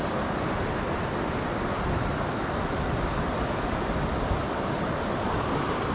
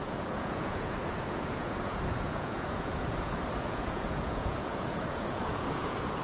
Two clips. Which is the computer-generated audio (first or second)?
second